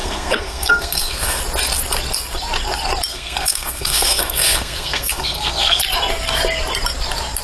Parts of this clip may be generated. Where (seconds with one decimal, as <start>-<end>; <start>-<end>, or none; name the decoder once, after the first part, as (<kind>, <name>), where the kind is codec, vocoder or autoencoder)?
0.0-1.4 (codec, SNAC); 3.1-5.8